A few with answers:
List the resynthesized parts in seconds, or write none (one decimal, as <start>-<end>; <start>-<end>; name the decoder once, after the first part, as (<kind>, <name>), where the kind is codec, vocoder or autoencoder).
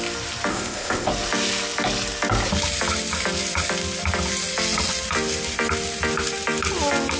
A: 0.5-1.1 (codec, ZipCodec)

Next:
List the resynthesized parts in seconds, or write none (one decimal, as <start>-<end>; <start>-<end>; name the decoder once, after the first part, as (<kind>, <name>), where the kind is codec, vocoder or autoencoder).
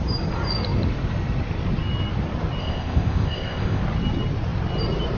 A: 2.6-3.8 (codec, ZipCodec)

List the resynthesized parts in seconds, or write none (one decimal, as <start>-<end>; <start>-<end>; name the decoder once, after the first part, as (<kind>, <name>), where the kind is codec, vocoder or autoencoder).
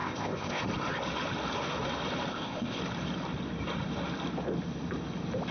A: 0.0-0.6 (codec, ZipCodec); 2.3-2.8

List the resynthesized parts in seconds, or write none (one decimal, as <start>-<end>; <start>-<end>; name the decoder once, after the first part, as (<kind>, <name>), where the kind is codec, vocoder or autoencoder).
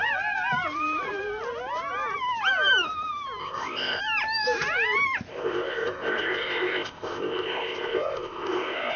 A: 3.4-4.0 (codec, ZipCodec); 5.3-9.0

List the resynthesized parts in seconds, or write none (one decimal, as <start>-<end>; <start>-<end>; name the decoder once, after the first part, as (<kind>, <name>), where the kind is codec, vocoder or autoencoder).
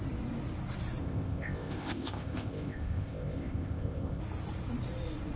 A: 1.0-4.2 (codec, ZipCodec)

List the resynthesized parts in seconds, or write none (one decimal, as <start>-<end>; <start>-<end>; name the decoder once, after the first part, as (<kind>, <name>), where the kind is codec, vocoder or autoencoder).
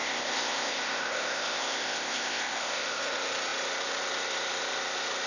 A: 0.0-3.0 (codec, ZipCodec)